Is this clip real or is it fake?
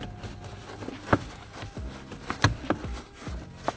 real